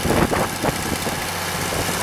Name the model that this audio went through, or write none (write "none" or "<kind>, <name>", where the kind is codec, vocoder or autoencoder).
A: none